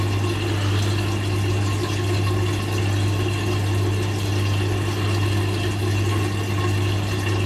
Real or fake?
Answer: real